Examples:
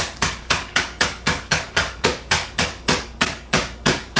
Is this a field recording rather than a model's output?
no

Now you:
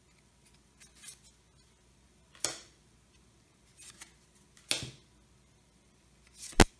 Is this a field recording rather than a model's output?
yes